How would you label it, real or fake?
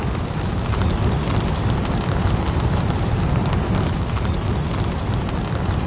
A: fake